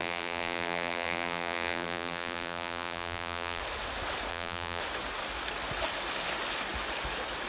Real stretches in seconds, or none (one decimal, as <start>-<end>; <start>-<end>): 3.6-4.3; 4.8-7.5